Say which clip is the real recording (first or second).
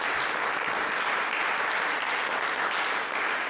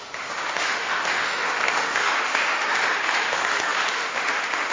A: first